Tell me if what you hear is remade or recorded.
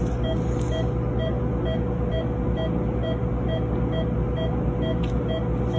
recorded